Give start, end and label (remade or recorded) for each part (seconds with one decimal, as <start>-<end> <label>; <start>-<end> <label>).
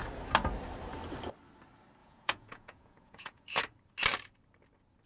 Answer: 0.0-2.0 recorded; 2.0-3.6 remade; 3.6-5.1 recorded